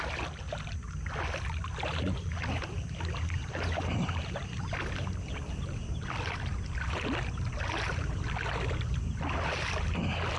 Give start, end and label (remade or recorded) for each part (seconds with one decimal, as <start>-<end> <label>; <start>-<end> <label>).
0.0-10.4 recorded